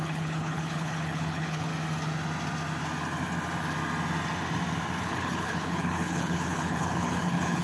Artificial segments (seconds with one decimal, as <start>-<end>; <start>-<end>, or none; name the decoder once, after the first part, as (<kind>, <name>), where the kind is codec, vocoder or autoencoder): 0.0-1.7 (codec, HILCodec); 5.0-7.6